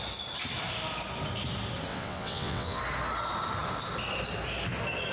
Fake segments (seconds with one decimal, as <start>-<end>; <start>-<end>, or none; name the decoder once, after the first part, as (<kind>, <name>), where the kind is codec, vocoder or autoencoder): 1.9-2.8 (vocoder, WaveNeXt)